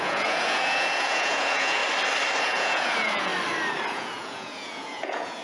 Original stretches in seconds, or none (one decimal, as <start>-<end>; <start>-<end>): 1.8-2.4; 3.3-3.9